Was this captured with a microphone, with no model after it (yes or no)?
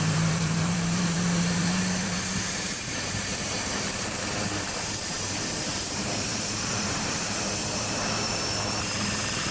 no